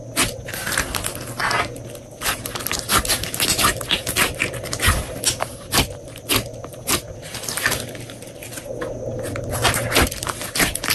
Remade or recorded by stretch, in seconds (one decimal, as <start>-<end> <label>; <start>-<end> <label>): 0.0-10.9 recorded